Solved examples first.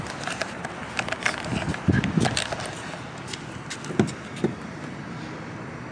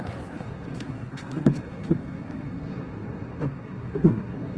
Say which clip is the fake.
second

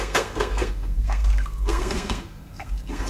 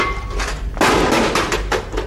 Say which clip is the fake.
first